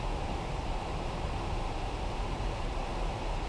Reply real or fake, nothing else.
real